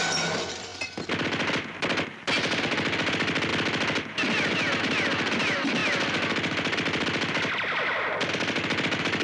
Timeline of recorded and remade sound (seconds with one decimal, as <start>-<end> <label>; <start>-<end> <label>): 0.0-0.7 remade; 0.7-2.6 recorded; 2.6-3.5 remade; 3.5-4.8 recorded; 4.8-9.2 remade